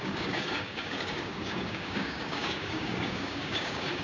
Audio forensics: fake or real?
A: fake